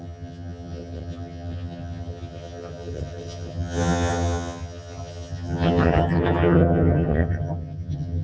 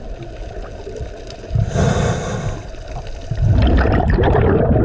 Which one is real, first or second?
second